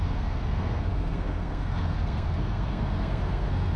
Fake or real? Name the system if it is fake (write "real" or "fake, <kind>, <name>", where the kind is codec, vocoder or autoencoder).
fake, codec, SNAC